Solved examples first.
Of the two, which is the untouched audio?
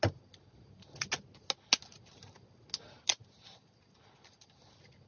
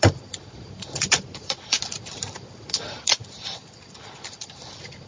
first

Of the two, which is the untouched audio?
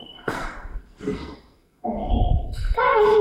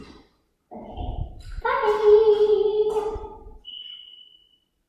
second